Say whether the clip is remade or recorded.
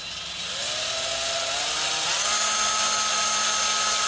recorded